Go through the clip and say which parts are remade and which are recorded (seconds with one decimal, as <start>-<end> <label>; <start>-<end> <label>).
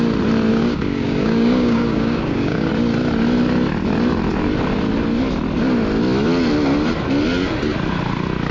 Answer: 0.0-0.5 recorded; 0.5-2.7 remade; 2.7-8.5 recorded